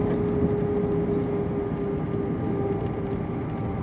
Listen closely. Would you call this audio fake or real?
real